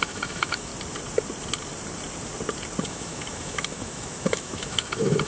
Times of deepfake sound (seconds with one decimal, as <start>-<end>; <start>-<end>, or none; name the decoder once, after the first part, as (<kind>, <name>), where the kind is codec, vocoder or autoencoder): 0.0-0.7 (autoencoder, DAC-VAE); 2.8-5.3